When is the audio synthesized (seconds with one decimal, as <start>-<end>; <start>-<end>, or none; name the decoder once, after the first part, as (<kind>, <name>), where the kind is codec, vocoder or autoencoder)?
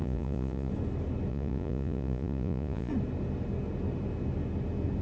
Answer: 0.0-0.7 (vocoder, Vocos); 1.3-2.9